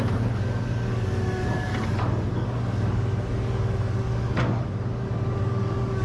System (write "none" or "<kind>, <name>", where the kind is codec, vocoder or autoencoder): codec, DAC